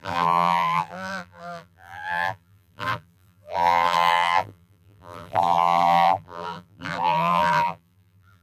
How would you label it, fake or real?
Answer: fake